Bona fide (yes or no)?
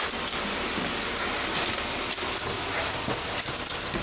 yes